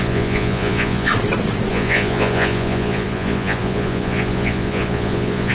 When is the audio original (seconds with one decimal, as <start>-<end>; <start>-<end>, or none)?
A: 1.1-1.7